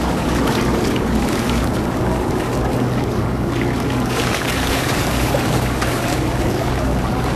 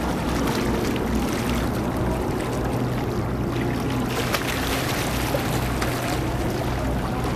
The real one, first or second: second